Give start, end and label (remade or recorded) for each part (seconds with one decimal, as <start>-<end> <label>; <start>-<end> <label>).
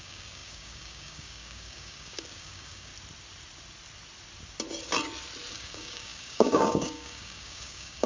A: 0.0-2.9 remade; 2.9-5.5 recorded; 5.5-8.1 remade